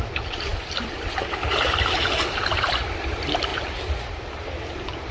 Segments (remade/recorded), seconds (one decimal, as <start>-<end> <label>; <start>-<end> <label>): 0.0-0.5 remade; 0.5-2.8 recorded; 2.8-3.5 remade; 3.5-4.1 recorded; 4.1-5.1 remade